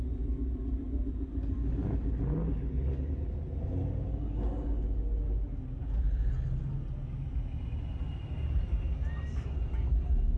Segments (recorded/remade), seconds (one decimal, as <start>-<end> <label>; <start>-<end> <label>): 0.0-5.8 recorded; 5.8-6.4 remade; 6.4-10.4 recorded